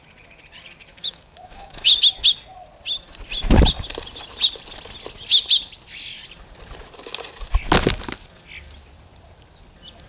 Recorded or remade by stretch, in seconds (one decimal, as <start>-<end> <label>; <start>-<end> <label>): 0.0-0.9 recorded; 0.9-1.9 remade; 1.9-10.1 recorded